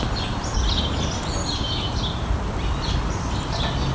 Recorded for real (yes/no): yes